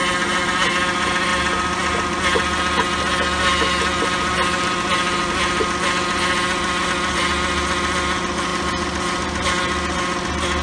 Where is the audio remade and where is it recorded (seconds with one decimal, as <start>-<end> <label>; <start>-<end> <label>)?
0.0-10.6 recorded